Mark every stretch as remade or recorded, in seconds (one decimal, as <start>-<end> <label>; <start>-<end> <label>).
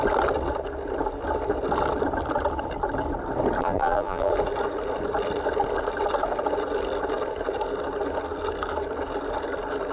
0.0-3.6 recorded; 3.6-4.3 remade; 4.3-9.9 recorded